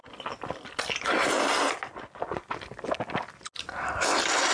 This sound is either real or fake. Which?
real